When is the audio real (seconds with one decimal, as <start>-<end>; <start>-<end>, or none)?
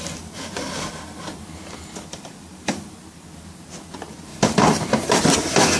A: 0.0-2.1; 2.8-4.3; 5.2-5.8